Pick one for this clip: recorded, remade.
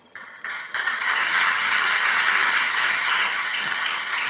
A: remade